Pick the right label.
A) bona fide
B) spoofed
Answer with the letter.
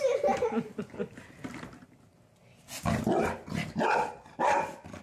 A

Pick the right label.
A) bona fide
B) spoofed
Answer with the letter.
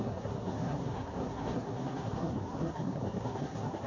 B